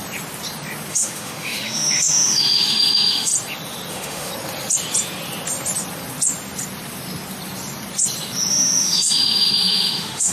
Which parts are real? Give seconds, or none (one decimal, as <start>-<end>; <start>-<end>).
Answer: 0.0-0.9; 3.3-3.9; 4.3-8.5